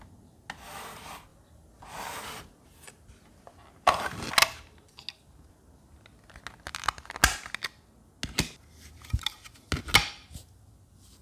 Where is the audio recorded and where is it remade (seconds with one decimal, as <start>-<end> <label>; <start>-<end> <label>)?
0.0-1.3 recorded; 1.3-4.3 remade; 4.3-11.2 recorded